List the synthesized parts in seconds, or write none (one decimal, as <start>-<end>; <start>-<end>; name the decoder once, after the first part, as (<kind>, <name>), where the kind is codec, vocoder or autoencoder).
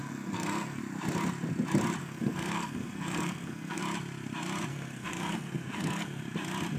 0.0-0.8 (codec, SNAC); 2.0-3.8; 4.7-6.2